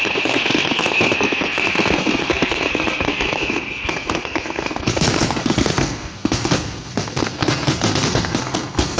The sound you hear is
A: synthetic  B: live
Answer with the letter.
A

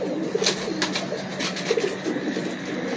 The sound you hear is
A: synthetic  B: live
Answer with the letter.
B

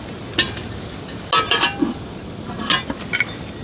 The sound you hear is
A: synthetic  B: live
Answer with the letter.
B